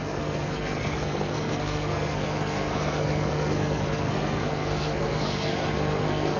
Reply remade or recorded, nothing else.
remade